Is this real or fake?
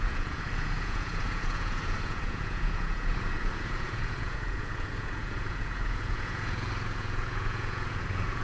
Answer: fake